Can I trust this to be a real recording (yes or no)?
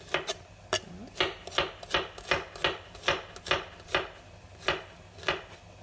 yes